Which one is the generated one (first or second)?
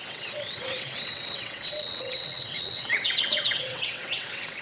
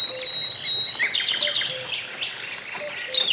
first